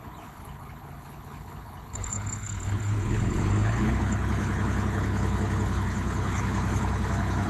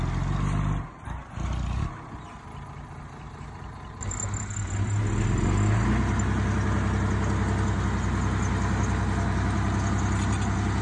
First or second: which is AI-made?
first